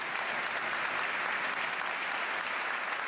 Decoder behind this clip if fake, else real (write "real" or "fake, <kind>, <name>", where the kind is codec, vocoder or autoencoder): real